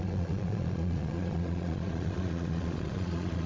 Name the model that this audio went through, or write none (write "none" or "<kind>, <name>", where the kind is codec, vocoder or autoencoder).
vocoder, Vocos